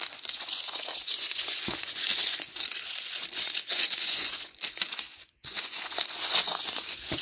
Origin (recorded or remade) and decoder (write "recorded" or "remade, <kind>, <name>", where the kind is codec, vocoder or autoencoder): remade, vocoder, Vocos